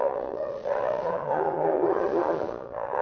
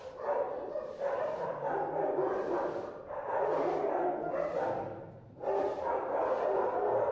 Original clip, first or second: second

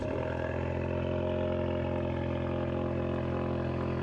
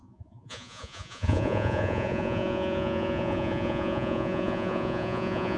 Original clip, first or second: first